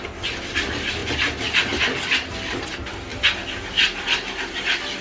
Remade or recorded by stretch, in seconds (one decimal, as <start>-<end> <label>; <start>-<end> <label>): 0.0-1.0 remade; 1.0-1.8 recorded; 1.8-3.1 remade; 3.1-3.7 recorded; 3.7-5.0 remade